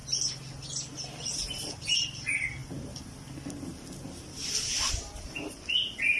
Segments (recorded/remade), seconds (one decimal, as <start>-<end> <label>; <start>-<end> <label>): 0.0-6.2 recorded